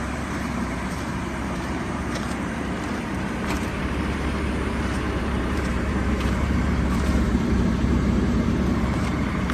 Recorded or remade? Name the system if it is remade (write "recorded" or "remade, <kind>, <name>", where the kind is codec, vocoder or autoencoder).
remade, vocoder, BigVGAN v2